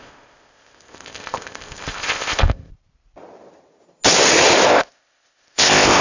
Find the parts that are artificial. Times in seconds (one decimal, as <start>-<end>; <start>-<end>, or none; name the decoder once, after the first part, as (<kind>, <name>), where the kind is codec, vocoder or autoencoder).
0.0-2.7 (codec, ZipCodec); 4.7-6.0